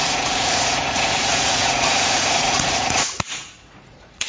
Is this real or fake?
fake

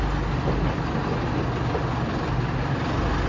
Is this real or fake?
real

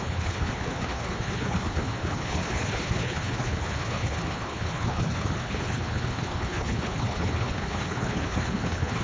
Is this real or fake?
fake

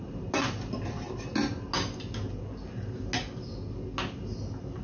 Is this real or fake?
real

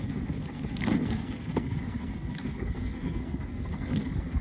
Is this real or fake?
fake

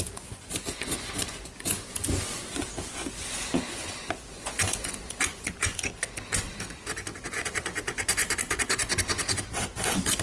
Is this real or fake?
fake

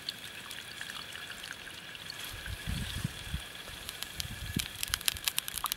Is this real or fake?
fake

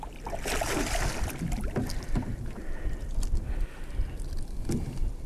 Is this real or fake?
real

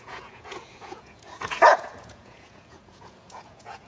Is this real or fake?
fake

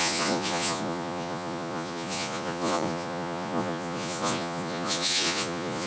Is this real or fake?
fake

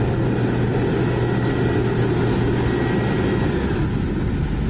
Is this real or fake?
real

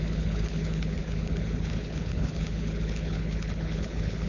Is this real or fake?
fake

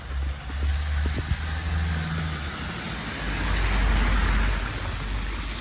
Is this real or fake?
real